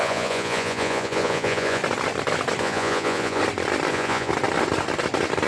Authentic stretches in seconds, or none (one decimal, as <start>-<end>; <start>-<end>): 1.8-2.6; 3.4-3.9; 4.3-5.5